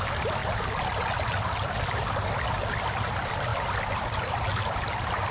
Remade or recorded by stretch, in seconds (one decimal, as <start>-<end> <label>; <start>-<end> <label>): 0.0-5.3 recorded